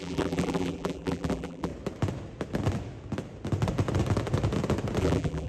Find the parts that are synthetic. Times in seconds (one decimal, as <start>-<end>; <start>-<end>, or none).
0.0-1.7; 5.0-5.5